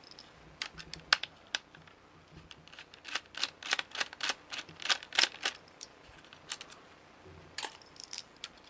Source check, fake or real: real